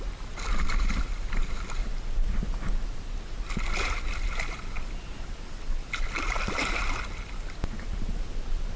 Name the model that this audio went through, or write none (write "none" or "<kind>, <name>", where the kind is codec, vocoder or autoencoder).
none